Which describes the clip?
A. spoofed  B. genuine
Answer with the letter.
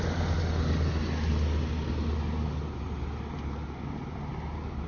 B